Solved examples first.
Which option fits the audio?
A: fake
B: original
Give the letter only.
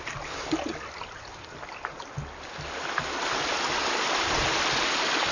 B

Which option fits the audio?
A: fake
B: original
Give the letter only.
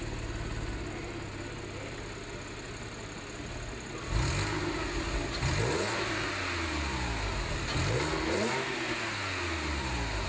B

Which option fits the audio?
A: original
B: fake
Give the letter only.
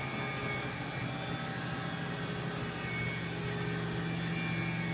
A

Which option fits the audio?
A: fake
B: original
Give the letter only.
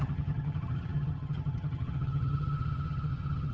A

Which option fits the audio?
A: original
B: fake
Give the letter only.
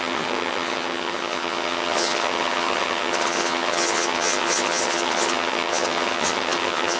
B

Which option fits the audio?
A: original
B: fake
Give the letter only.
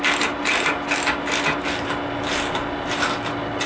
A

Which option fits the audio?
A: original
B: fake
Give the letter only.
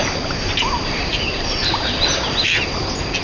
A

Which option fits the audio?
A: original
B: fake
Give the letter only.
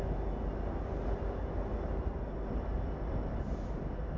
A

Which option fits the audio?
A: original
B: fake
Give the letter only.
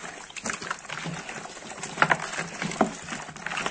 A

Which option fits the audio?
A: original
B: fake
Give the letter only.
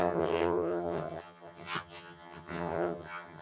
B